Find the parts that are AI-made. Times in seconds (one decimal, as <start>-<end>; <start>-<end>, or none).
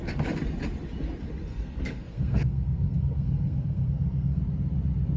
1.4-4.4